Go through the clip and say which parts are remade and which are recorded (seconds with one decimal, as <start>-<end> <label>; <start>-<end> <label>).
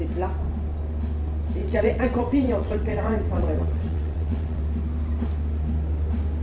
0.0-1.6 recorded; 1.6-4.6 remade; 4.6-6.4 recorded